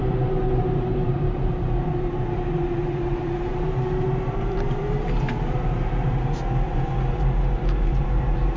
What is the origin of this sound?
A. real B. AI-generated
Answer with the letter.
B